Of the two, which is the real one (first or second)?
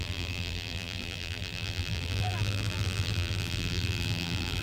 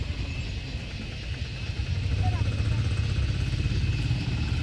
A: second